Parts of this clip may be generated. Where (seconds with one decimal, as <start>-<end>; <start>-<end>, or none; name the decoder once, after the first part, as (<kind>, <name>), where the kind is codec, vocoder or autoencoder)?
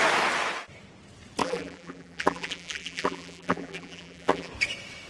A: 1.4-4.5 (vocoder, BigVGAN v2)